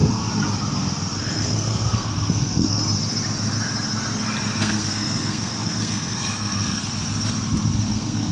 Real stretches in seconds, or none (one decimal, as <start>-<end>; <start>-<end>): 0.0-1.2; 2.8-4.6; 6.8-7.9